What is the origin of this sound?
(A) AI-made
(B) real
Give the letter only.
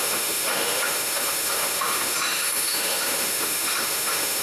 A